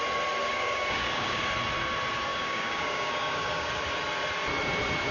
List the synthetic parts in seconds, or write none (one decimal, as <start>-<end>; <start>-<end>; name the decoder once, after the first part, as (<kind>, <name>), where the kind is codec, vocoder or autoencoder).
0.4-1.4 (codec, DAC); 2.3-3.7